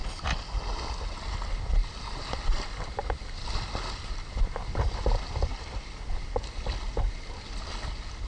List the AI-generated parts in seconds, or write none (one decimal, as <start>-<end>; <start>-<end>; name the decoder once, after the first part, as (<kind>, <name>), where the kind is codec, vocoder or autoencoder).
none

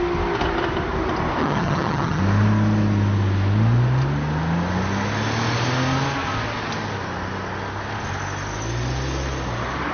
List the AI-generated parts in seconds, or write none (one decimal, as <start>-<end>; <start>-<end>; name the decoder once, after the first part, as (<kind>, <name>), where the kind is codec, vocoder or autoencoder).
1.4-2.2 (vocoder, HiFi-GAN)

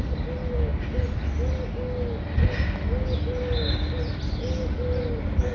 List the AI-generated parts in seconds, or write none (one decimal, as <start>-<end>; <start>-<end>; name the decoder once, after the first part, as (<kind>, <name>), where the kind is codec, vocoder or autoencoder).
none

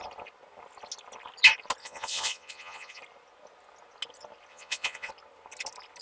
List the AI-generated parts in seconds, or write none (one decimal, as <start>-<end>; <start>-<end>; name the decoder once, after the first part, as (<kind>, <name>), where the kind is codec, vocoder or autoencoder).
1.8-3.0 (vocoder, Vocos); 4.5-5.1

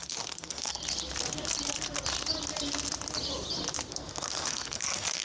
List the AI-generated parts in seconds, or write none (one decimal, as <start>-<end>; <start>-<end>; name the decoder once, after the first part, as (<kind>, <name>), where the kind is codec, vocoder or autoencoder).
0.0-0.8 (codec, SNAC); 3.9-5.2

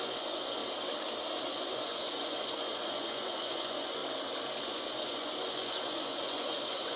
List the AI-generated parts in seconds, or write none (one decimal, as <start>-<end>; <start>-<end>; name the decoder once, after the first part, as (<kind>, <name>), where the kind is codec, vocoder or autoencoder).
0.0-0.6 (vocoder, Vocos); 1.5-4.0; 4.6-7.0